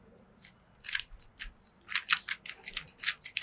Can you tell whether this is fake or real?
real